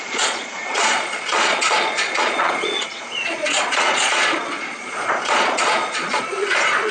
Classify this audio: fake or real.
fake